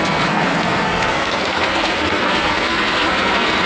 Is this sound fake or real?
fake